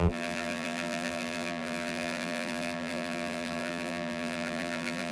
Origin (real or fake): fake